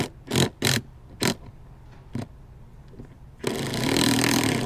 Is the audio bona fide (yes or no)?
yes